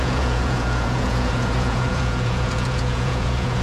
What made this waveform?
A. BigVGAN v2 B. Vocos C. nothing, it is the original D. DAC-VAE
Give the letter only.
B